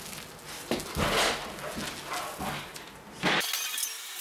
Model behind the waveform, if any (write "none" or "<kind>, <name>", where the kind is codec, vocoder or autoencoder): none